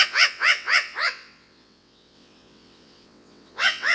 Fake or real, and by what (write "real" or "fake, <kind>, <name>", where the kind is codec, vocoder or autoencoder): fake, vocoder, WaveNeXt